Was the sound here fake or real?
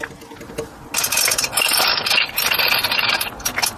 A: real